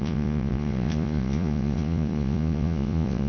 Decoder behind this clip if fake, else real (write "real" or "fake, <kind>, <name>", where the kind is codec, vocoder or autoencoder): fake, vocoder, Vocos